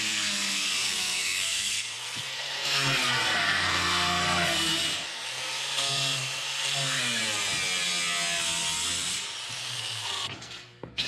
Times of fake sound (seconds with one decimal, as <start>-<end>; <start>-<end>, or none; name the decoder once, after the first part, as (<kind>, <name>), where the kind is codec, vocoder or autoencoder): 0.0-7.2 (codec, SNAC); 9.6-11.1

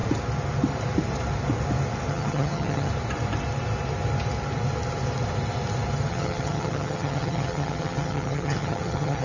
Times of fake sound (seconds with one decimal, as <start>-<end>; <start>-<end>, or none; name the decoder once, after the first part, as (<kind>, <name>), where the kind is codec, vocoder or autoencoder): 2.1-2.9 (vocoder, HiFi-GAN); 6.1-9.2